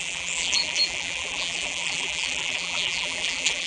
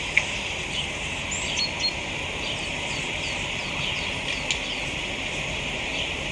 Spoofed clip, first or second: first